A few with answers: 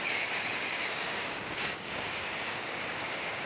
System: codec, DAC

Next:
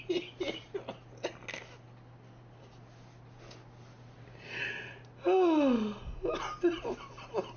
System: none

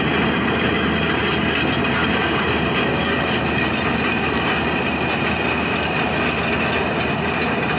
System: none